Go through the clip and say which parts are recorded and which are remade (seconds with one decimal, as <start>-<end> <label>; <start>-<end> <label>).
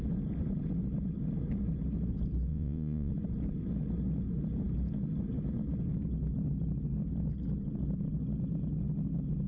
0.0-2.5 recorded; 2.5-3.1 remade; 3.1-9.5 recorded